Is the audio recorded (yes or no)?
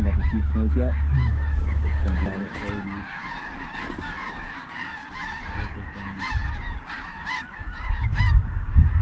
no